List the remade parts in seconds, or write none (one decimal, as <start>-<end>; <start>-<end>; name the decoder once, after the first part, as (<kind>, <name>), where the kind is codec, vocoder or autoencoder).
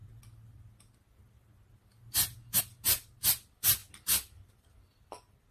none